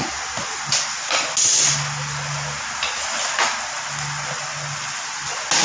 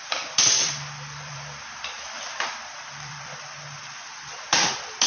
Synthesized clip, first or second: second